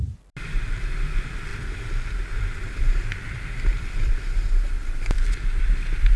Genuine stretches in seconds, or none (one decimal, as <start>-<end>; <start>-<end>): 0.0-1.5; 5.2-6.2